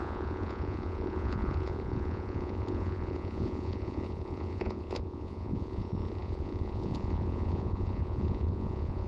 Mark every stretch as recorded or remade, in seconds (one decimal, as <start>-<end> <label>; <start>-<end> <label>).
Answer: 0.0-9.1 remade